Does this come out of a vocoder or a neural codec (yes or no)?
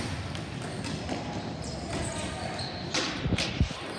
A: no